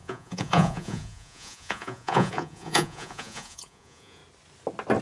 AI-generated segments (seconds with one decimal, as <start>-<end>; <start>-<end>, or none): 0.0-4.2